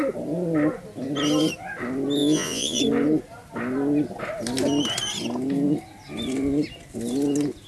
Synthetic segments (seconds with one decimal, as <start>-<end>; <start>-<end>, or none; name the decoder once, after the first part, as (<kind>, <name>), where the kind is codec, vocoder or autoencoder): 2.2-2.8 (vocoder, Vocos)